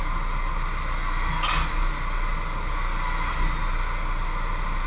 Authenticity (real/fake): real